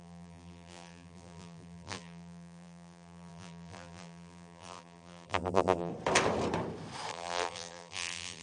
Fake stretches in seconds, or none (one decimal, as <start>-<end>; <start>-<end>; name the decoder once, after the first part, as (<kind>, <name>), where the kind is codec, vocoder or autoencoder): 0.0-5.9 (vocoder, BigVGAN v2); 7.1-8.4